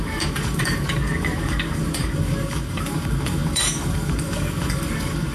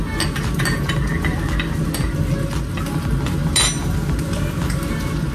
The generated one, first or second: first